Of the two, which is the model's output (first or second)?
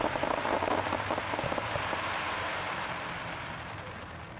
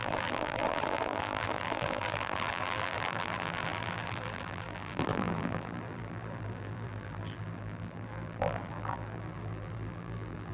second